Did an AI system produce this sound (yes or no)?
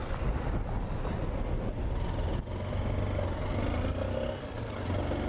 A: no